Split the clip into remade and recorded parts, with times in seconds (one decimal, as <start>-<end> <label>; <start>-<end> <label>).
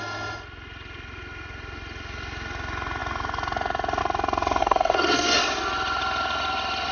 0.0-4.6 recorded; 4.6-5.4 remade; 5.4-6.9 recorded